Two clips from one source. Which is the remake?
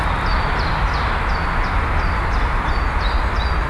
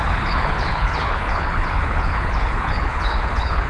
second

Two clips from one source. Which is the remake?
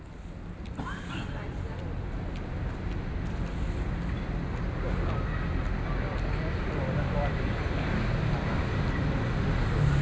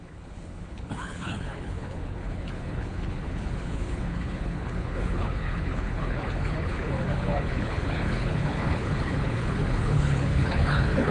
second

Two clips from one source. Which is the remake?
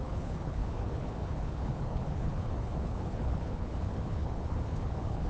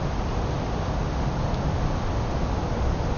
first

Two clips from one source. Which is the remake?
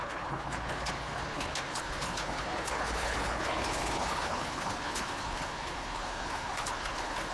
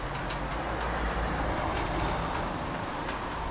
first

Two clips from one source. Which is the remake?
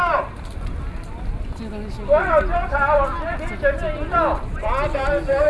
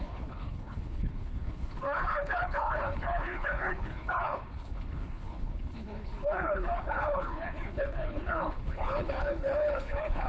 second